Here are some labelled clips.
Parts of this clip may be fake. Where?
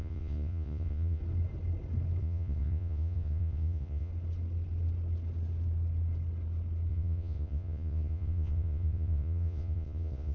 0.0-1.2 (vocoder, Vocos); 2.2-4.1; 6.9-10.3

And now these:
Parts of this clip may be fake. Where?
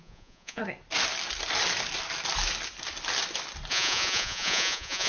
0.0-0.6 (vocoder, Vocos); 3.7-5.1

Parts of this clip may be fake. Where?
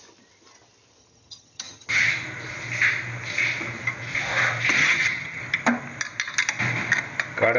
1.0-2.1 (vocoder, HiFi-GAN); 4.8-5.4